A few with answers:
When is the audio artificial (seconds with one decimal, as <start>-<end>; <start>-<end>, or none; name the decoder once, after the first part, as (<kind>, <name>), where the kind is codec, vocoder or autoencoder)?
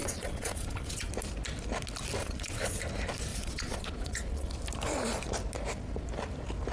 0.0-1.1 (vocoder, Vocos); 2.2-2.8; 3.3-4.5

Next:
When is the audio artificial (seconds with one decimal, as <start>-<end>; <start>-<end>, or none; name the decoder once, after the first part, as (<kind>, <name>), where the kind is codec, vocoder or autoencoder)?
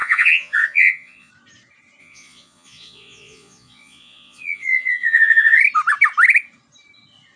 0.0-1.3 (vocoder, Vocos); 2.0-5.6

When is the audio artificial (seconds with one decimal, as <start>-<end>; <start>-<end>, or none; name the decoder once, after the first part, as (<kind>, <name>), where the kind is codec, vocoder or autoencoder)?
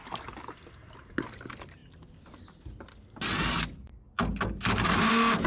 none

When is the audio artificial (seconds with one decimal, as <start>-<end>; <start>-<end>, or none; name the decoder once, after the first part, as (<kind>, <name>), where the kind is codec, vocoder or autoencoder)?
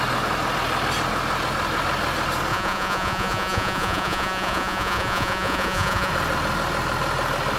2.5-6.1 (vocoder, Vocos)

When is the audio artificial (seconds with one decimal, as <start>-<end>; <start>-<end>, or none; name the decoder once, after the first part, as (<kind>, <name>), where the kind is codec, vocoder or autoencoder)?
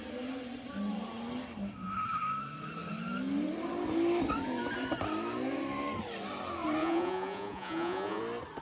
6.8-8.2 (vocoder, Vocos)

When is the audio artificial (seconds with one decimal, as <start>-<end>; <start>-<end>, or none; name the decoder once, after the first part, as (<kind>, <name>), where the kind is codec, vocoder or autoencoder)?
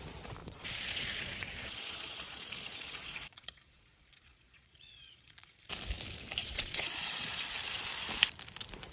0.4-5.6 (vocoder, Vocos); 6.4-7.5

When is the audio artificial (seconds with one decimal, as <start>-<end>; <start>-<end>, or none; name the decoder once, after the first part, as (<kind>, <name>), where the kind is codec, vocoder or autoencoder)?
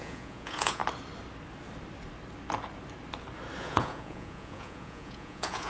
0.0-0.8 (vocoder, Vocos); 3.6-5.7